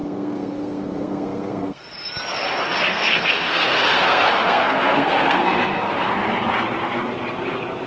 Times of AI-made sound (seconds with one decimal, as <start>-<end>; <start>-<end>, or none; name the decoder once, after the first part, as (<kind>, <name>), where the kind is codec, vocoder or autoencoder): 0.0-1.8 (codec, SNAC); 2.9-6.1